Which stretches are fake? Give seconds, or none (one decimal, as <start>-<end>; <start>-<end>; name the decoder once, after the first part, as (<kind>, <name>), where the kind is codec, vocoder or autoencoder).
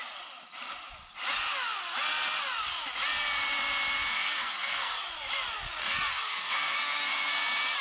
4.1-5.0 (codec, SNAC); 5.8-7.3